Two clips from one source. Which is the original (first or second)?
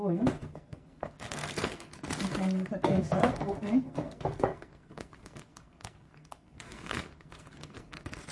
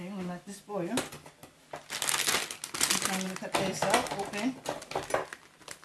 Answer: second